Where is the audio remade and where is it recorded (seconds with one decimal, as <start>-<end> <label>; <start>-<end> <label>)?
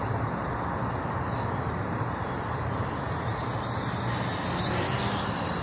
0.0-3.4 remade; 3.4-5.6 recorded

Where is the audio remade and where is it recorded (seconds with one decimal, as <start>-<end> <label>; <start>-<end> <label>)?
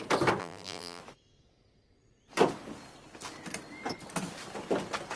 0.0-0.4 recorded; 0.4-1.0 remade; 1.0-5.2 recorded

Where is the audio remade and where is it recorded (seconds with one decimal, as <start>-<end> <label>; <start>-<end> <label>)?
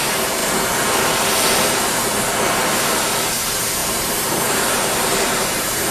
0.0-0.4 remade; 0.4-3.3 recorded; 3.3-5.9 remade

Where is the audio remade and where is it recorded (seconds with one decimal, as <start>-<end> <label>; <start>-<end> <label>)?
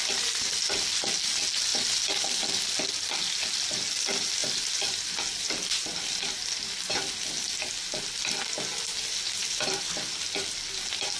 0.0-1.7 recorded; 1.7-2.6 remade; 2.6-9.4 recorded; 9.4-10.2 remade; 10.2-11.2 recorded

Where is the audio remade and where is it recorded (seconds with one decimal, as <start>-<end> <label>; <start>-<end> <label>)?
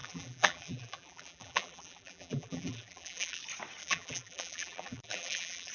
0.0-3.4 remade; 3.4-3.8 recorded; 3.8-5.7 remade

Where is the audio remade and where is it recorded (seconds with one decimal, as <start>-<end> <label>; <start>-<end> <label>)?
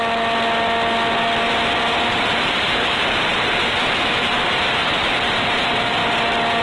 0.0-2.1 recorded; 2.1-6.0 remade; 6.0-6.6 recorded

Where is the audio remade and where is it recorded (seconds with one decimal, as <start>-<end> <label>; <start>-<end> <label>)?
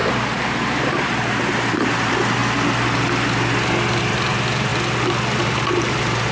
0.0-2.4 remade; 2.4-4.0 recorded; 4.0-4.7 remade; 4.7-5.4 recorded; 5.4-6.3 remade